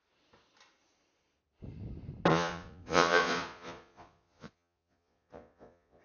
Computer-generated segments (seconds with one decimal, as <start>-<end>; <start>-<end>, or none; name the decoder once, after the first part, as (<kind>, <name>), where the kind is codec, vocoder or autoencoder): 2.3-6.0 (vocoder, Vocos)